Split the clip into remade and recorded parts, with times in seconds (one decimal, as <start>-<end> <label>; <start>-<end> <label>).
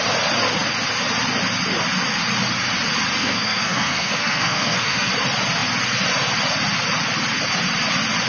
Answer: 0.0-3.2 recorded; 3.2-5.1 remade; 5.1-8.3 recorded